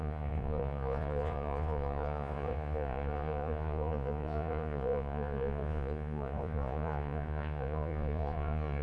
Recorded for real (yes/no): no